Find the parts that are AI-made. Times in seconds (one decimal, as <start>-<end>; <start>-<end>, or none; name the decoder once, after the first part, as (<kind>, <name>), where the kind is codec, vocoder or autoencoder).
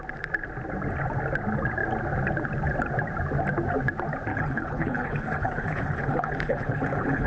4.3-7.3 (codec, HILCodec)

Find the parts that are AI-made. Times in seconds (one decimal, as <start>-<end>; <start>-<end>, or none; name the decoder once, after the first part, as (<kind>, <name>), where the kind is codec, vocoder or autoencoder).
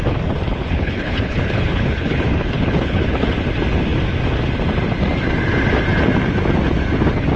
0.5-3.3 (codec, HILCodec)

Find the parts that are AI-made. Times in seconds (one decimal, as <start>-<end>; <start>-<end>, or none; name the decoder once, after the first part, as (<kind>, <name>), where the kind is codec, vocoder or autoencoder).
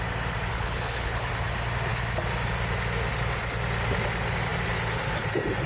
0.5-1.3 (codec, HILCodec)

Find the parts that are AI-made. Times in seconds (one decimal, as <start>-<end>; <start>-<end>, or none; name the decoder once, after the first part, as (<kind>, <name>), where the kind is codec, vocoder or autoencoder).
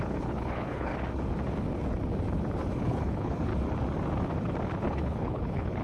0.0-0.9 (codec, HILCodec); 2.8-3.5; 4.8-5.8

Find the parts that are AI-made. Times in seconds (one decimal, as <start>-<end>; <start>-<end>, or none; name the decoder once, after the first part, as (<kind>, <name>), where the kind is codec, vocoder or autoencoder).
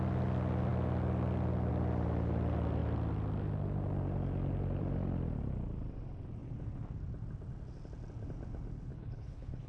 8.9-9.7 (codec, HILCodec)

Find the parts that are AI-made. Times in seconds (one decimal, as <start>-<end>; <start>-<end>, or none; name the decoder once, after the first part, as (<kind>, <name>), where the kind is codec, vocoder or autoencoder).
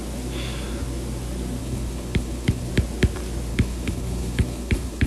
1.6-2.7 (codec, HILCodec); 3.5-5.1